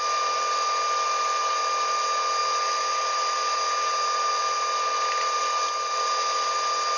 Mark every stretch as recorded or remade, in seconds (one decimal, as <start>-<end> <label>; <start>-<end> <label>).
0.0-7.0 recorded